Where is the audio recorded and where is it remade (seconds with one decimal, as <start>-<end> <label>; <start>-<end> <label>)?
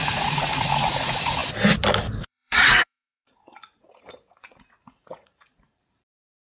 0.0-1.4 remade; 1.4-2.2 recorded; 2.2-6.6 remade